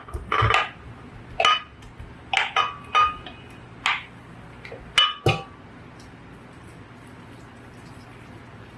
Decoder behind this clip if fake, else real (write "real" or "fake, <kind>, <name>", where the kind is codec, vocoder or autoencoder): real